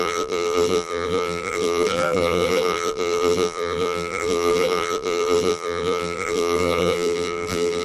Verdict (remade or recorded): remade